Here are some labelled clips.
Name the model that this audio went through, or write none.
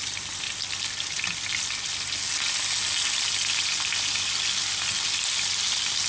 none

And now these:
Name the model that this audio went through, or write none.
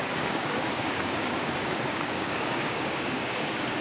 codec, DAC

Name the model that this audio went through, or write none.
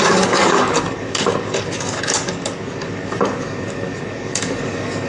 codec, DAC